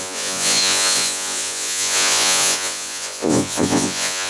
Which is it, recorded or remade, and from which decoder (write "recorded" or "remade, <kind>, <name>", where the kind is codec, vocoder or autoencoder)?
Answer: remade, vocoder, Vocos